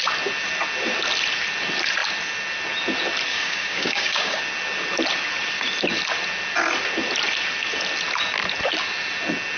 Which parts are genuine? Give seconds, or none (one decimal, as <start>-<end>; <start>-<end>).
0.0-3.3; 4.4-9.6